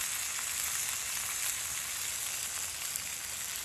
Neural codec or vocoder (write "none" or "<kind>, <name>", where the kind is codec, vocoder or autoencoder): none